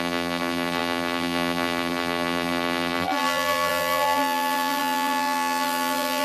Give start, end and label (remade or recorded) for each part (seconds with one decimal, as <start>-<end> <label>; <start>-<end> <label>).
0.0-6.2 remade